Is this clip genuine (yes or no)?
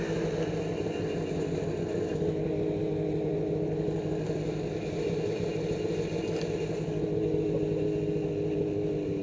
yes